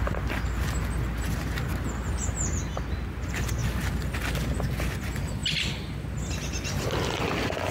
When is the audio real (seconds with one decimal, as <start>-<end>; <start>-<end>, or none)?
0.0-7.7